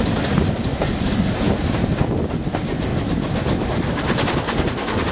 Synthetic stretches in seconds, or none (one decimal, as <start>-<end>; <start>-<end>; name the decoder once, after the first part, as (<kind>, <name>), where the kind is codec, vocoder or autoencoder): none